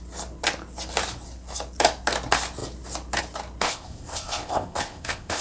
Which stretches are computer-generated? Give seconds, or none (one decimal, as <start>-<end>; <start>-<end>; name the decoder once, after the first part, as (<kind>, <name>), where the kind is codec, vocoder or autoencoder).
3.6-5.4 (codec, ZipCodec)